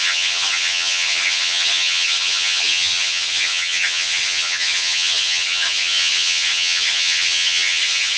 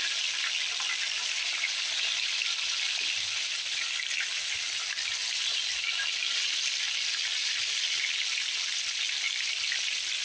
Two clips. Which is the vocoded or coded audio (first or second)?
first